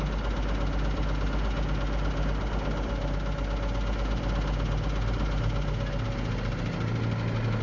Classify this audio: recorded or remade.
recorded